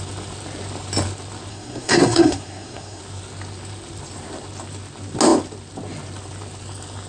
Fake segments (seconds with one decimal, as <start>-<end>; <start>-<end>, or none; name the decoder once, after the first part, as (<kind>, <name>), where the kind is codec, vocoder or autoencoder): 1.5-3.0 (codec, SNAC)